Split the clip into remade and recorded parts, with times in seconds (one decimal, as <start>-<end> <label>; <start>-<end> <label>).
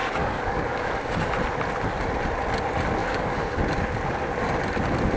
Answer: 0.0-1.3 remade; 1.3-3.0 recorded; 3.0-3.6 remade; 3.6-5.2 recorded